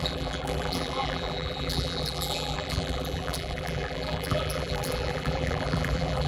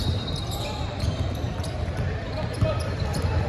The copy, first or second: first